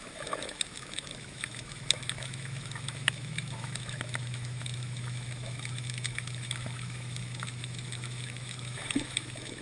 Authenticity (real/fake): fake